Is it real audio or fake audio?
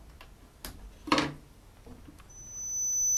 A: real